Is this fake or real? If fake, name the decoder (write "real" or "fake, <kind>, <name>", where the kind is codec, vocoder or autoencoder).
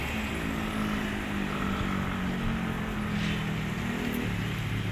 real